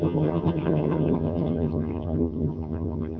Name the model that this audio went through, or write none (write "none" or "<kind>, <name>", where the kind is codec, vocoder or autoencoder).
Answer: vocoder, HiFi-GAN